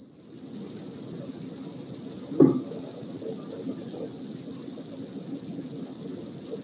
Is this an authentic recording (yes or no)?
yes